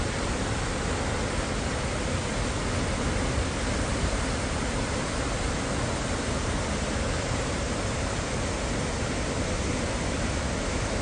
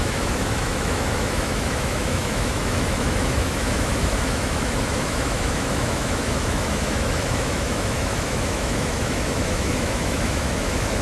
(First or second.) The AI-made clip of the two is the second